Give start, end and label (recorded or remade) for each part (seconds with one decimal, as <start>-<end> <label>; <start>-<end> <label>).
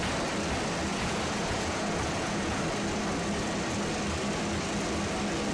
0.0-0.9 recorded; 0.9-2.6 remade; 2.6-5.5 recorded